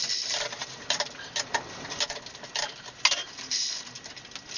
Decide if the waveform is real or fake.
real